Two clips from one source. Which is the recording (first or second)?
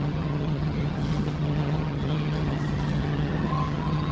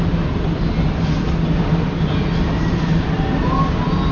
second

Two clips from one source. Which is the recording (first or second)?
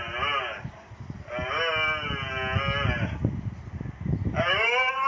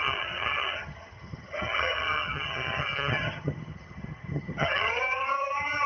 first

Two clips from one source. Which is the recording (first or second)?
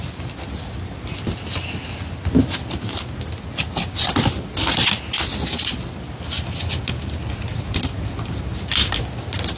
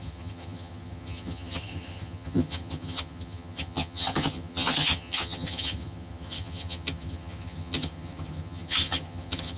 first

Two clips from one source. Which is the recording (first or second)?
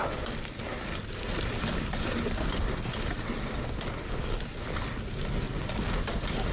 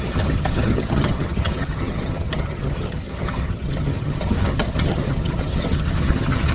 first